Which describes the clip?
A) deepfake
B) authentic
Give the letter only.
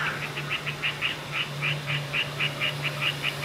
B